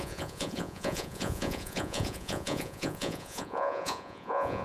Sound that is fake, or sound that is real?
fake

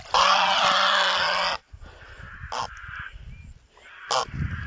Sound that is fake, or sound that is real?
real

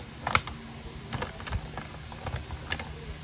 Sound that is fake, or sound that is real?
real